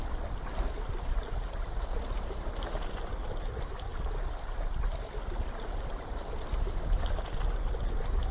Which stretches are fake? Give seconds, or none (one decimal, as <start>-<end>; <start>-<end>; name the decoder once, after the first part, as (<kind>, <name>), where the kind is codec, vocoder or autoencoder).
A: none